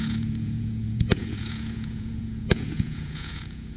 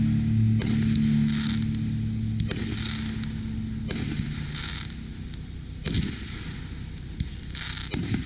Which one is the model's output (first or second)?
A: first